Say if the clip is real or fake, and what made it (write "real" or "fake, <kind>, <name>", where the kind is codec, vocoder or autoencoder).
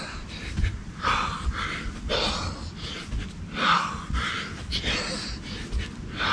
real